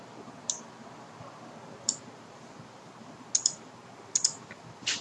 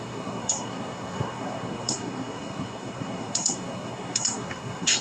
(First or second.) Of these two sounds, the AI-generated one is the second